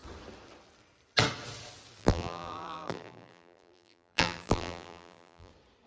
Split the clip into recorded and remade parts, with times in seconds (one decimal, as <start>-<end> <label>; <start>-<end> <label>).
0.0-2.0 recorded; 2.0-5.5 remade; 5.5-5.9 recorded